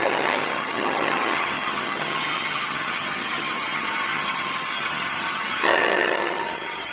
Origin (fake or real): fake